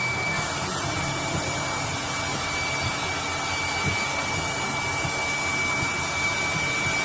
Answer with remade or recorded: recorded